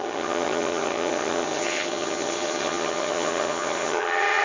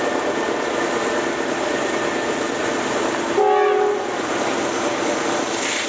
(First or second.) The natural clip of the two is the second